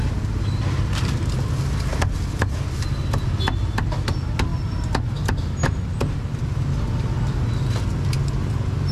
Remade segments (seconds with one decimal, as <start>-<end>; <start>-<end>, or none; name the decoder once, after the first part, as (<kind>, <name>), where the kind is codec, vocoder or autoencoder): none